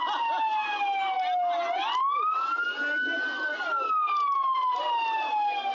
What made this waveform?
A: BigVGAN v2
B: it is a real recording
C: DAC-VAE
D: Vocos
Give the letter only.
B